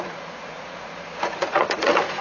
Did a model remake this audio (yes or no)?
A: yes